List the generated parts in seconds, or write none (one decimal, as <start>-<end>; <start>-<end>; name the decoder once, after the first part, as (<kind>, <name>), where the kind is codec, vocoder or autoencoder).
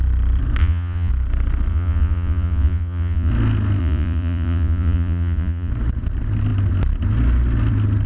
0.6-1.1 (vocoder, Vocos); 1.7-3.3; 3.8-5.7